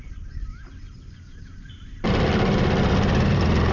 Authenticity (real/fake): real